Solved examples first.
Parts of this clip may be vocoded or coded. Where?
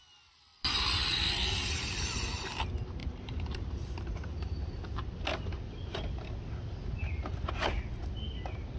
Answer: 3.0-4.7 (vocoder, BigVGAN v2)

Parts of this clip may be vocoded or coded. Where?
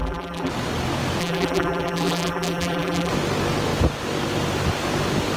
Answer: 0.0-0.5 (vocoder, BigVGAN v2); 1.2-3.1